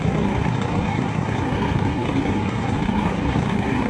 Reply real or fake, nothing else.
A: fake